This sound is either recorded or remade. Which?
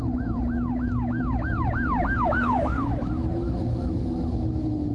remade